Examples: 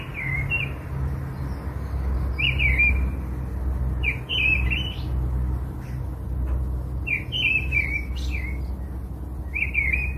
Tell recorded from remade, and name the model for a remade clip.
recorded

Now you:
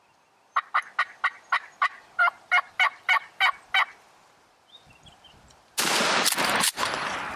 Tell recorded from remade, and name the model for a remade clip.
recorded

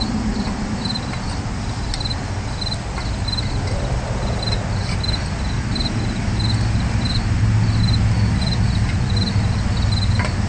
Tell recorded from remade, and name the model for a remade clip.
recorded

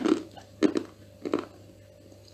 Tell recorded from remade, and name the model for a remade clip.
recorded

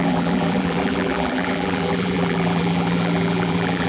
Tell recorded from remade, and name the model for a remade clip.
remade, vocoder, BigVGAN v2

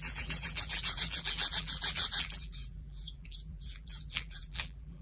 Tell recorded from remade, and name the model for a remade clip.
remade, vocoder, BigVGAN v2